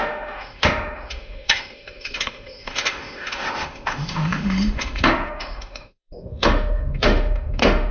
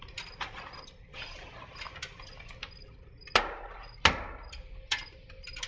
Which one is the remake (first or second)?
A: first